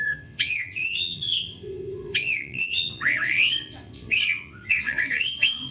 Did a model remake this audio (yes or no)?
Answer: yes